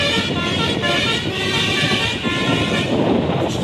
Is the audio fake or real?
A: real